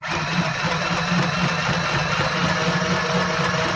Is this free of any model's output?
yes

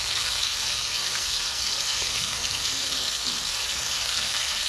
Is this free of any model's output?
no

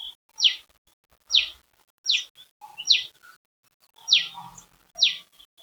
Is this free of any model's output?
yes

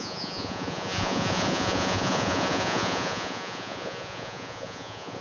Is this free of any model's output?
no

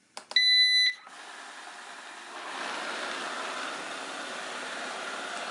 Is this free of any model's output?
yes